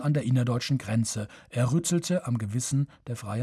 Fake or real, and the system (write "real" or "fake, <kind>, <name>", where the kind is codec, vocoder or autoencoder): real